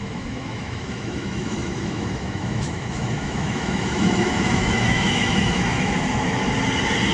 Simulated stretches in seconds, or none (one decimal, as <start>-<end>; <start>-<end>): 0.0-6.4